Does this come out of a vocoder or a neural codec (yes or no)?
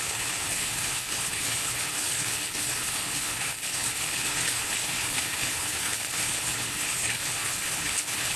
yes